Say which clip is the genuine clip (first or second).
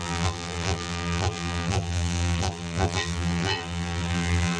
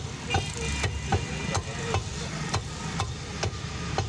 second